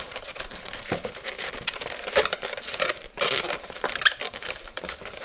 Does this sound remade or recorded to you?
remade